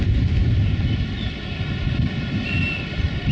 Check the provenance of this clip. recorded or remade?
recorded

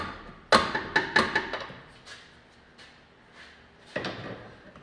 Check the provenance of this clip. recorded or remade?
recorded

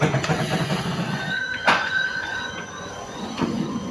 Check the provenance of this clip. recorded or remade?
remade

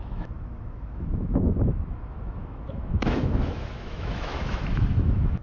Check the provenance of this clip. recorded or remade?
remade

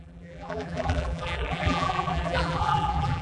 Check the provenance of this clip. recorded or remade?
remade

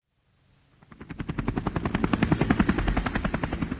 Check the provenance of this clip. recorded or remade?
recorded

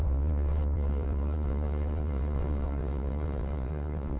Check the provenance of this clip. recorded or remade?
remade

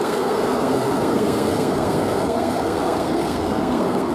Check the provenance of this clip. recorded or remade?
remade